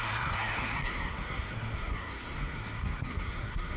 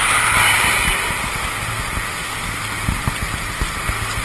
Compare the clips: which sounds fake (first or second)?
first